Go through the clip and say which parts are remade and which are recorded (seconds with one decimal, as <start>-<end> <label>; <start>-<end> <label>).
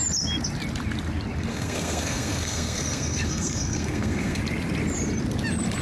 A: 0.0-1.5 recorded; 1.5-4.4 remade; 4.4-5.8 recorded